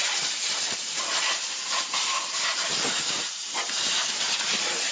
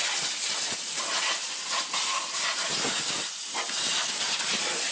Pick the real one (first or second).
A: second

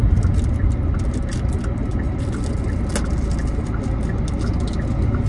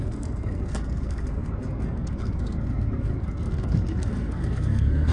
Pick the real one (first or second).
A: first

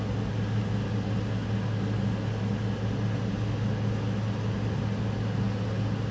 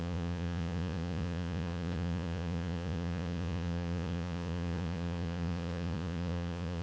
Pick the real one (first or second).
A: first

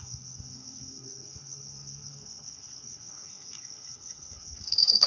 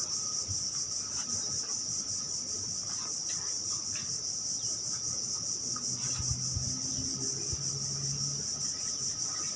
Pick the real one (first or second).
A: second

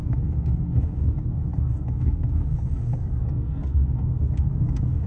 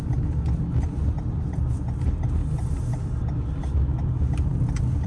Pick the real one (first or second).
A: second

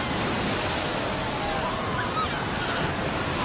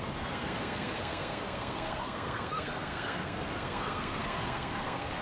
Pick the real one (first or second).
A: first